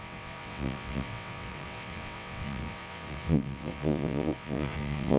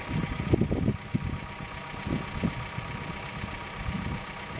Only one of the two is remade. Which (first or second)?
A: first